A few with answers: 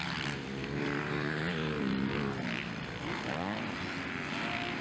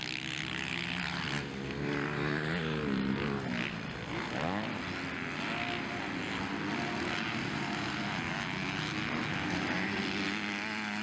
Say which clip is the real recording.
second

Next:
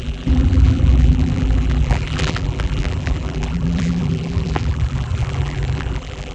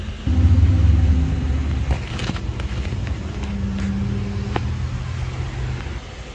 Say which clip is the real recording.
second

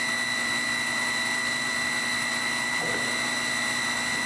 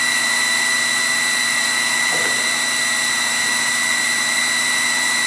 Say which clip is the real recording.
first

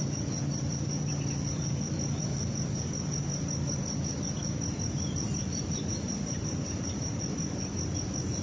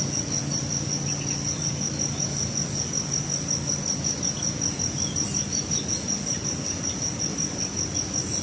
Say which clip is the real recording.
second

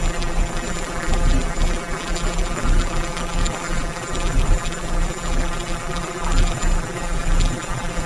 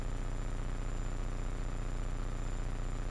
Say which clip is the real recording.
second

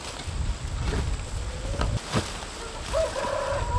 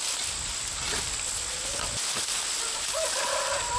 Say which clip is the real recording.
second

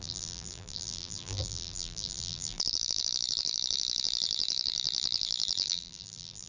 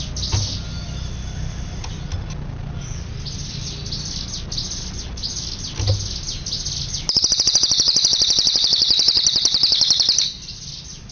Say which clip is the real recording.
second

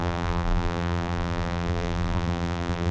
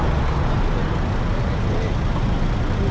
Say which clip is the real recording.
second